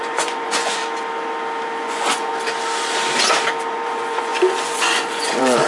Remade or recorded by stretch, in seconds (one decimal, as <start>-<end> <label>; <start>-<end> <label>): 0.0-0.8 remade; 0.8-1.8 recorded; 1.8-2.3 remade; 2.3-3.7 recorded; 3.7-5.7 remade